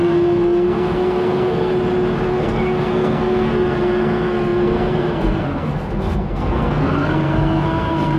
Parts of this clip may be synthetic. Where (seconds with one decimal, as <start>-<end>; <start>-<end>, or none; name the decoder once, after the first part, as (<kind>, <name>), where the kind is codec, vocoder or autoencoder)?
0.0-1.7 (codec, SNAC); 2.3-8.2